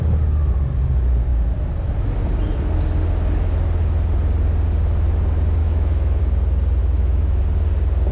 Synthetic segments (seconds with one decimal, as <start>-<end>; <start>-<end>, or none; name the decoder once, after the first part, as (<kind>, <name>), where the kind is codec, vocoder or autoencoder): 5.6-6.2 (autoencoder, DAC-VAE); 6.8-7.4